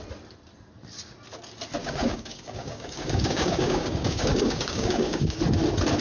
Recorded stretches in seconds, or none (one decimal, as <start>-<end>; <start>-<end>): 0.0-1.8; 5.4-6.0